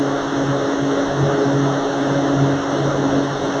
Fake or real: real